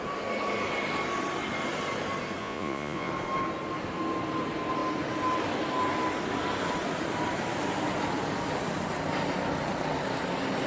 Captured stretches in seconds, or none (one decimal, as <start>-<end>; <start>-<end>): 0.0-2.4; 3.1-10.7